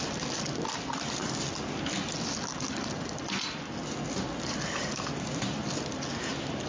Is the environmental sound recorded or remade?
recorded